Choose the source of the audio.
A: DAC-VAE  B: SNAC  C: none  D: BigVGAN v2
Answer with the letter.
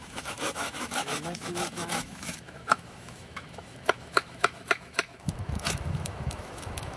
A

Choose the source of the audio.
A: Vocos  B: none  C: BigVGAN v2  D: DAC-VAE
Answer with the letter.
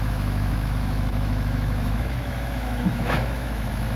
D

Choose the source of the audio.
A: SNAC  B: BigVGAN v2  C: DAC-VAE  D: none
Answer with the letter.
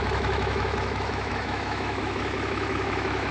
C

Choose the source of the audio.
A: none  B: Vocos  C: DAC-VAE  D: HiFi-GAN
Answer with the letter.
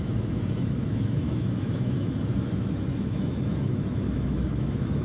C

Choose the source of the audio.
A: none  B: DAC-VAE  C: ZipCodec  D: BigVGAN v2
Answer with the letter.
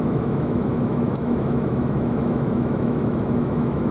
B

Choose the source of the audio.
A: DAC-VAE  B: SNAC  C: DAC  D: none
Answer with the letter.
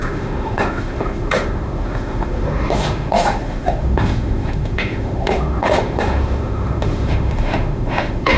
A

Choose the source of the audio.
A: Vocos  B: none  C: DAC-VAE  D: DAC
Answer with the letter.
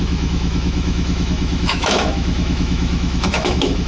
C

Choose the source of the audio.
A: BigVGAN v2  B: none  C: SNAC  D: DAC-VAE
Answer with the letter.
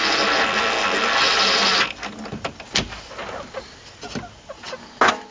B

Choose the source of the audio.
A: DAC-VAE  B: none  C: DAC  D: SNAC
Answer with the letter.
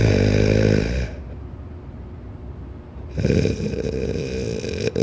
B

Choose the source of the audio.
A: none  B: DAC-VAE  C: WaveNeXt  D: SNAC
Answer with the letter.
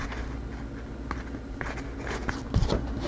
A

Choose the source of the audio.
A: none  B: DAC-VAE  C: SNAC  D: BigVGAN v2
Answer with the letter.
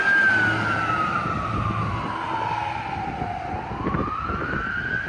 A